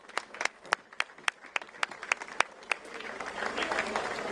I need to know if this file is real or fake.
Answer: real